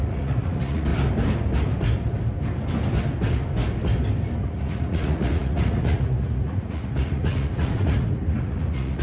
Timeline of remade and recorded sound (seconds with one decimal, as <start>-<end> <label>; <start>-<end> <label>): 0.0-0.9 remade; 0.9-4.4 recorded; 4.4-9.0 remade